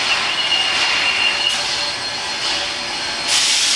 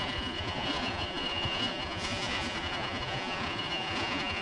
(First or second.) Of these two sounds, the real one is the first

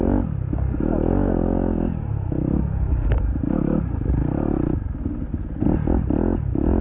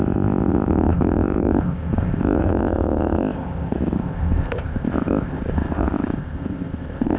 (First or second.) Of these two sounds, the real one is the first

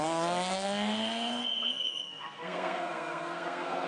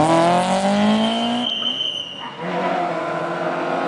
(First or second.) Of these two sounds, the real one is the second